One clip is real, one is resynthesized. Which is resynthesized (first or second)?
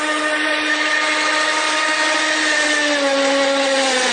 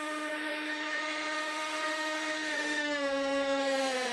second